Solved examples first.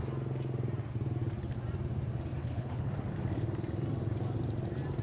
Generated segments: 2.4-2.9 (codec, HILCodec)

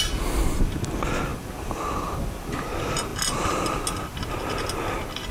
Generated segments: none

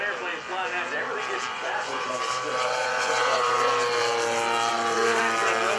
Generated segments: 1.5-2.1 (vocoder, Vocos); 2.8-3.7; 4.7-5.2

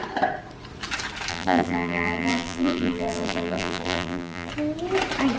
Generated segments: 1.3-4.5 (vocoder, BigVGAN v2)

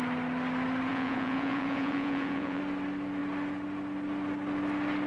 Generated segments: 0.9-2.6 (vocoder, Vocos)